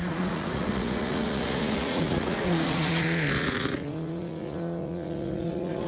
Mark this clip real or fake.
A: fake